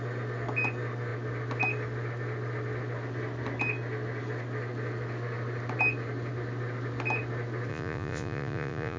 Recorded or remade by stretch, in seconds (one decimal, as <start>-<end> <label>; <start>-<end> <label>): 0.0-7.7 recorded; 7.7-9.0 remade